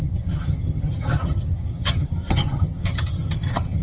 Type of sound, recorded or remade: remade